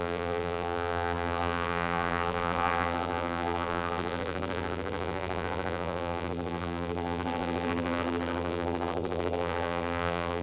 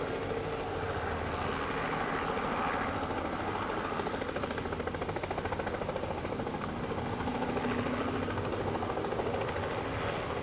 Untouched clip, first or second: second